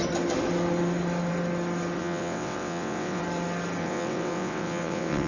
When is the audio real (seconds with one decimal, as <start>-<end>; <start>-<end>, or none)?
0.0-2.0; 3.2-3.8